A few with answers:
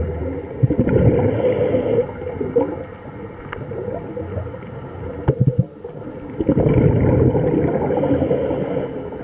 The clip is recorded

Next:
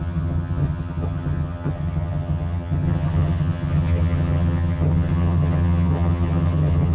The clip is remade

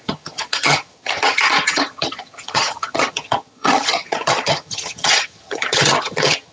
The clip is remade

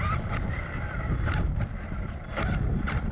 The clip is recorded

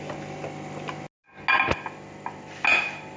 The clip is recorded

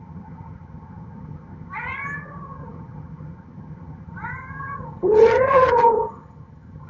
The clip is remade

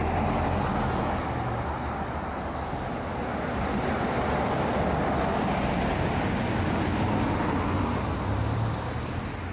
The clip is recorded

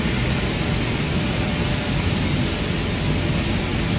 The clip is recorded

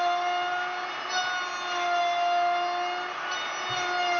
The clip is recorded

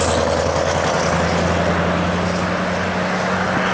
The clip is recorded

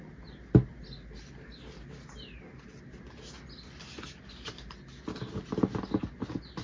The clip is recorded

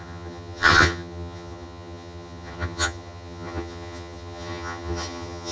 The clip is remade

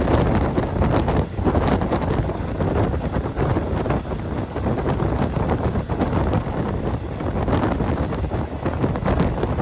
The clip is recorded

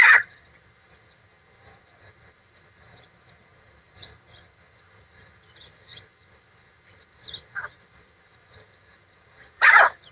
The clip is remade